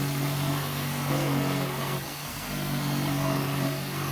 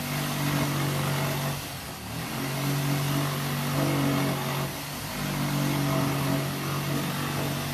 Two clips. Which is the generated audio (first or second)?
first